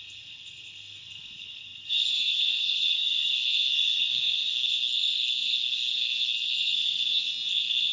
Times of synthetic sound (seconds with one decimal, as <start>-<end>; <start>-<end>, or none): 0.0-7.9